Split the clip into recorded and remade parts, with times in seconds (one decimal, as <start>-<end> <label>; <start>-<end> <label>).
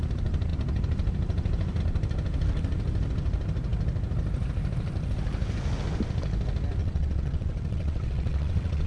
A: 0.0-6.8 recorded; 6.8-8.9 remade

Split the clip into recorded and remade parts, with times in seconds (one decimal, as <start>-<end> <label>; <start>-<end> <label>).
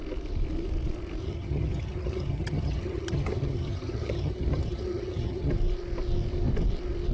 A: 0.0-1.2 recorded; 1.2-5.5 remade; 5.5-7.1 recorded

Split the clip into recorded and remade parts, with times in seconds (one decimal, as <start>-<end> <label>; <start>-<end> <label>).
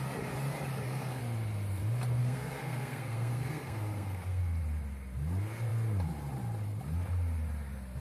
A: 0.0-0.7 recorded; 0.7-1.2 remade; 1.2-2.2 recorded; 2.2-4.4 remade; 4.4-8.0 recorded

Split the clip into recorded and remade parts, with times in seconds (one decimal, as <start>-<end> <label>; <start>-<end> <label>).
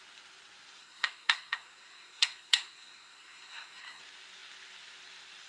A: 0.0-0.8 recorded; 0.8-4.0 remade; 4.0-5.5 recorded